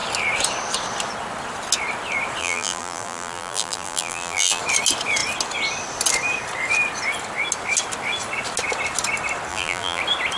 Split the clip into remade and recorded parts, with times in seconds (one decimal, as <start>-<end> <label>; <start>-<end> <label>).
0.0-2.4 recorded; 2.4-4.6 remade; 4.6-9.5 recorded; 9.5-10.0 remade; 10.0-10.4 recorded